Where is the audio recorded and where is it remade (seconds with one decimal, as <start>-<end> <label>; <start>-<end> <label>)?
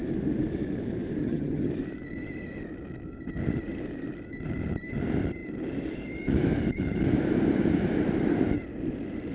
0.0-1.2 recorded; 1.2-1.7 remade; 1.7-9.3 recorded